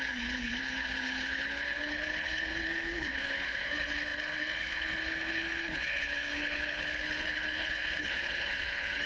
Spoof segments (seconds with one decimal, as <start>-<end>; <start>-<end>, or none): 0.0-9.1